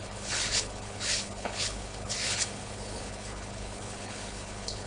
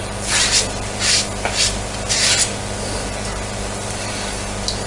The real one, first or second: second